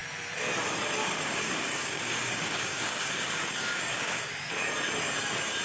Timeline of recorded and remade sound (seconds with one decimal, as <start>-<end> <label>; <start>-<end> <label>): 0.0-1.0 recorded; 1.0-4.4 remade; 4.4-5.6 recorded